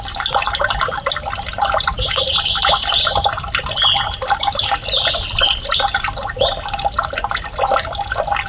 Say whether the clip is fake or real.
real